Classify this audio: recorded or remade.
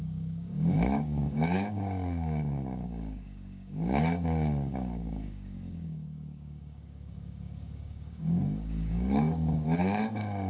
remade